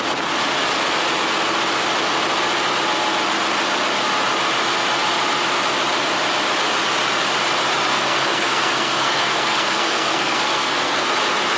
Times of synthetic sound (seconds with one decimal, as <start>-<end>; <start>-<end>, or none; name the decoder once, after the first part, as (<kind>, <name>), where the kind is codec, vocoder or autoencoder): 7.9-11.1 (codec, SNAC)